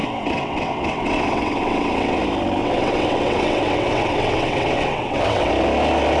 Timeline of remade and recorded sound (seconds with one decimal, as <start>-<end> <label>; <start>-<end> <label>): 0.0-2.2 remade; 2.2-2.6 recorded; 2.6-5.5 remade; 5.5-6.2 recorded